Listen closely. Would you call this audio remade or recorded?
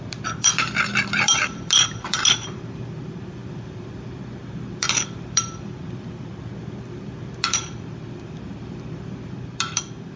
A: remade